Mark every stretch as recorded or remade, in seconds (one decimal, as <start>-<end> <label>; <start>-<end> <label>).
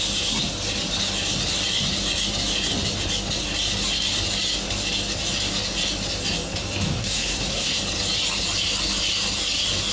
0.0-7.0 recorded; 7.0-7.8 remade; 7.8-9.9 recorded